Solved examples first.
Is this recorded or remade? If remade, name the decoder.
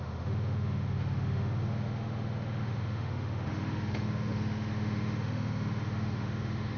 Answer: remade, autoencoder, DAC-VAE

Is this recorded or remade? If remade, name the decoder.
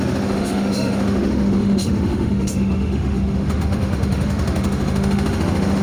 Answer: remade, autoencoder, DAC-VAE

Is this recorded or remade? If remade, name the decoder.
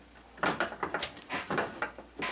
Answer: recorded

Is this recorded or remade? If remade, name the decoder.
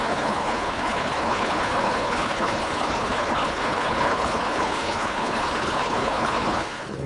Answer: remade, codec, HILCodec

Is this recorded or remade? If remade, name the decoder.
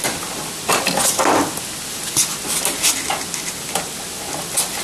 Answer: recorded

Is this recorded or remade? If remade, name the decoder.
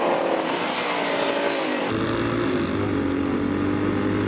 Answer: recorded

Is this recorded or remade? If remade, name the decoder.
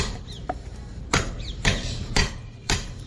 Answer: remade, vocoder, BigVGAN v2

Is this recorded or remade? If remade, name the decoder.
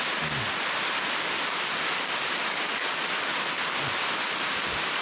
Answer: recorded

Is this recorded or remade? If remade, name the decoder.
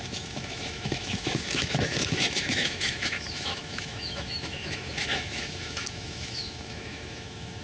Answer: remade, autoencoder, DAC-VAE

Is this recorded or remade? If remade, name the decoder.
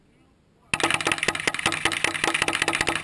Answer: recorded